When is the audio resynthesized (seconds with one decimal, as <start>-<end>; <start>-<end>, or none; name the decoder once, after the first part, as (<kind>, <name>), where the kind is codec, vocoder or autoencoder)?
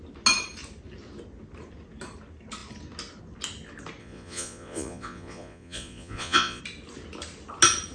4.0-6.6 (vocoder, Vocos)